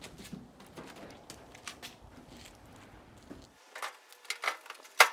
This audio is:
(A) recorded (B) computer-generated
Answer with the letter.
A